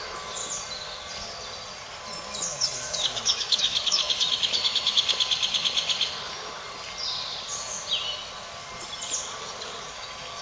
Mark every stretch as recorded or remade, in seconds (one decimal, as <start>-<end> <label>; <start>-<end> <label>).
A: 0.0-0.4 remade; 0.4-2.4 recorded; 2.4-5.0 remade; 5.0-9.8 recorded; 9.8-10.4 remade